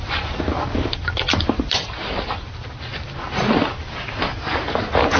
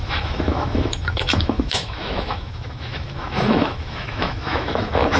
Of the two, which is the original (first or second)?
first